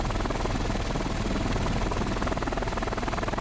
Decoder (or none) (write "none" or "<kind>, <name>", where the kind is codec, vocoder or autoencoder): none